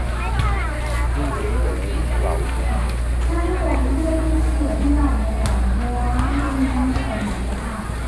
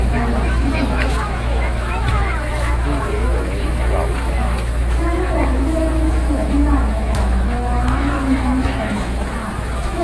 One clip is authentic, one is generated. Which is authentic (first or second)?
first